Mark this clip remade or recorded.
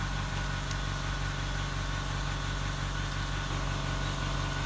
recorded